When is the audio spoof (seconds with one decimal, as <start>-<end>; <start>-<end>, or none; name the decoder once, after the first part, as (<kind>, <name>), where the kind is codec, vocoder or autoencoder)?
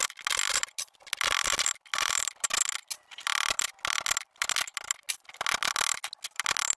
none